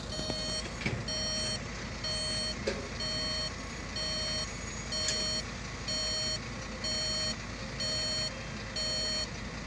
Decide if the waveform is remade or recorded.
recorded